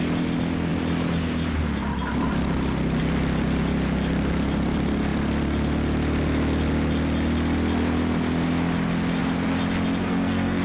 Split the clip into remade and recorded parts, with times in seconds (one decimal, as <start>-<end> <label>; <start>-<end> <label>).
0.0-10.0 recorded; 10.0-10.6 remade

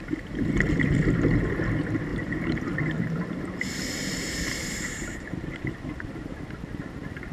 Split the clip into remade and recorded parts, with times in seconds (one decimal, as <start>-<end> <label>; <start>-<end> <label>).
0.0-2.1 recorded; 2.1-6.5 remade; 6.5-7.3 recorded

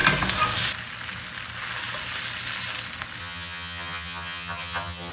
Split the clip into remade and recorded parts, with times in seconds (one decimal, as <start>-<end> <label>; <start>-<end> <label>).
0.0-3.2 recorded; 3.2-5.1 remade

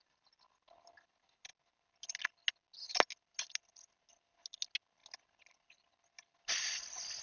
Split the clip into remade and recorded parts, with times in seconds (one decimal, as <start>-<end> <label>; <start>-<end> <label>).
0.0-7.2 recorded

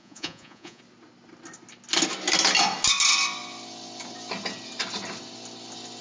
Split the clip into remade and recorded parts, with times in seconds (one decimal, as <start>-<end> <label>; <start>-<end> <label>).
0.0-0.8 remade; 0.8-6.0 recorded

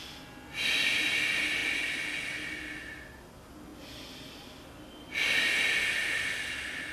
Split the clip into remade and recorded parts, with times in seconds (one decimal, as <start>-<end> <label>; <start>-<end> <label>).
0.0-6.9 recorded

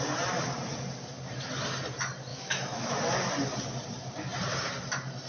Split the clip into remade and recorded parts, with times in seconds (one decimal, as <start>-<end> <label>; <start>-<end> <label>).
0.0-2.3 recorded; 2.3-3.0 remade; 3.0-5.3 recorded

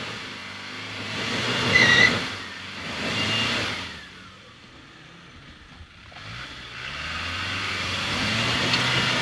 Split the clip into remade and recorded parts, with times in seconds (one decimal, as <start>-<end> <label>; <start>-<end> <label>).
0.0-9.2 recorded